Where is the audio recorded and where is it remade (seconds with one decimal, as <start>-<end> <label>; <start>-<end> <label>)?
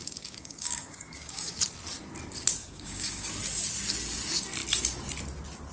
0.0-1.6 remade; 1.6-2.6 recorded; 2.6-3.3 remade; 3.3-5.7 recorded